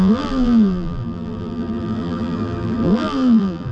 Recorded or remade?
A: remade